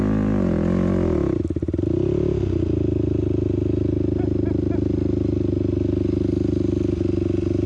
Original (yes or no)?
yes